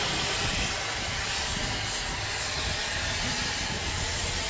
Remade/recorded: recorded